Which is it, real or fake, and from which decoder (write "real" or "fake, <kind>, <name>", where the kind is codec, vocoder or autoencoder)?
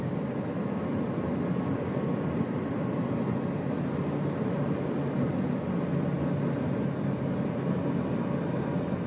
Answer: real